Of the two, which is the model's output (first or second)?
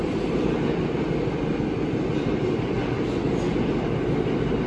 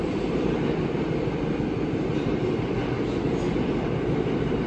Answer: second